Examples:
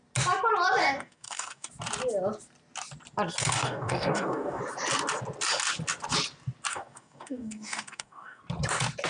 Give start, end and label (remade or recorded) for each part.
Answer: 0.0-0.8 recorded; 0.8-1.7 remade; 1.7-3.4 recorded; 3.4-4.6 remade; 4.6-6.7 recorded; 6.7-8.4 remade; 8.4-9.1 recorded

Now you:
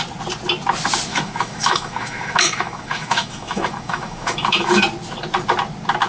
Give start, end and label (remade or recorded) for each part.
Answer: 0.0-1.1 recorded; 1.1-4.8 remade; 4.8-6.1 recorded

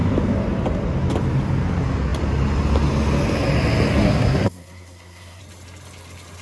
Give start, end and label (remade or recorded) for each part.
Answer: 0.0-3.9 recorded; 3.9-5.4 remade; 5.4-6.4 recorded

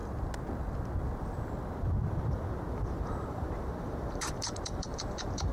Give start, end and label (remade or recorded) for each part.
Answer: 0.0-2.7 recorded; 2.7-5.5 remade